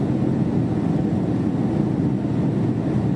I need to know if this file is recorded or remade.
recorded